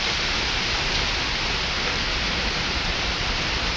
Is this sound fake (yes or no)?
yes